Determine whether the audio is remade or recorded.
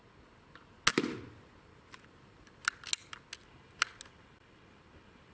recorded